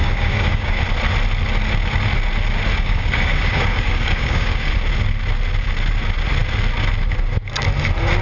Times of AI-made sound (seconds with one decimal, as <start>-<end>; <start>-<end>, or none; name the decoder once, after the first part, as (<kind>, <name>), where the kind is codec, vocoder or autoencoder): 0.0-0.8 (codec, DAC); 2.7-4.7